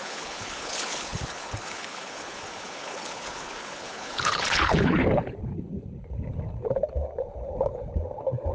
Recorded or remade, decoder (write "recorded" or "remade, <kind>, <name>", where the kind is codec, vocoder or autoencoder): remade, codec, HILCodec